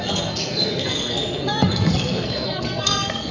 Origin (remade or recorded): remade